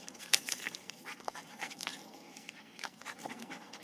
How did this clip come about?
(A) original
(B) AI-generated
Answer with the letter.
B